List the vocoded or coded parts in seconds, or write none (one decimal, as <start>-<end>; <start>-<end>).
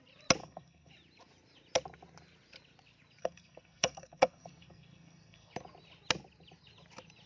0.4-0.9; 3.2-5.5